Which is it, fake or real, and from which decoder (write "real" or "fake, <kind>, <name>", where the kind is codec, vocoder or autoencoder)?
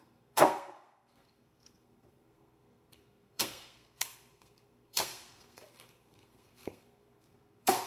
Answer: fake, codec, SNAC